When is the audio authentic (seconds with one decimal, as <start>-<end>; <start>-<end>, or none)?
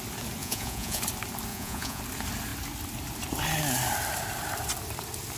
0.0-0.4; 1.0-1.5; 2.0-5.4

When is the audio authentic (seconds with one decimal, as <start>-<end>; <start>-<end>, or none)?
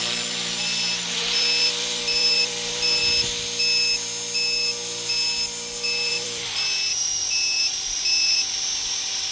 3.0-6.1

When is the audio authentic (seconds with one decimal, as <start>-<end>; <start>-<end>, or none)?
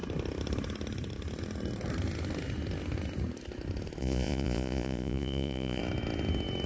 0.0-4.0; 5.8-6.7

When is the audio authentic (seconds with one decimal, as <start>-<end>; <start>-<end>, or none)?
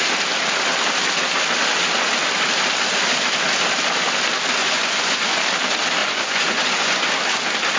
0.0-4.6; 5.4-6.0; 7.1-7.8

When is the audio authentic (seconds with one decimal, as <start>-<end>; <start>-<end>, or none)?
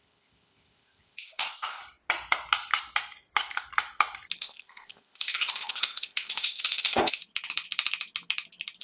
1.8-4.4; 7.2-8.8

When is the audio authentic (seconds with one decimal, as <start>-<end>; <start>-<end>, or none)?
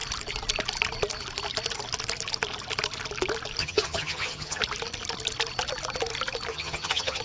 0.0-3.6; 4.6-6.5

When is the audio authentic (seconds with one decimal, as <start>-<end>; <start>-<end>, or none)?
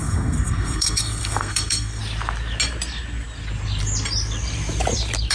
2.0-5.3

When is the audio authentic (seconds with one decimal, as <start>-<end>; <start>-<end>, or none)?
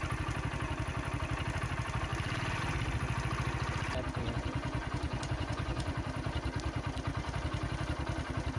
0.0-4.2; 6.0-8.6